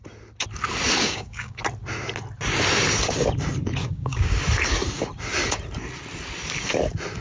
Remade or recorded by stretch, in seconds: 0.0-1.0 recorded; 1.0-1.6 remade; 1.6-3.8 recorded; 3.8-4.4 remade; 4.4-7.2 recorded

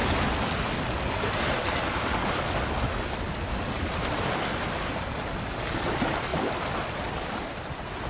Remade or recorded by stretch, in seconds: 0.0-8.1 recorded

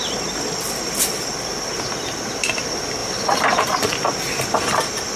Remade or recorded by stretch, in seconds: 0.0-3.0 recorded; 3.0-3.6 remade; 3.6-5.2 recorded